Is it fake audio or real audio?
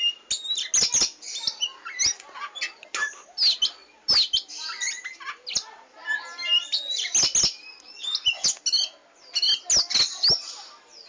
real